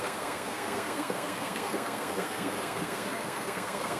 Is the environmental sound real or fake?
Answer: fake